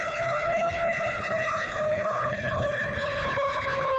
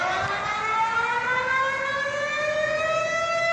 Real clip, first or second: second